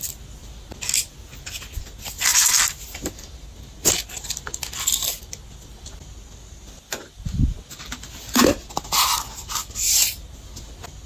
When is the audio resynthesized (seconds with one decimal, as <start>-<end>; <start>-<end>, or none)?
none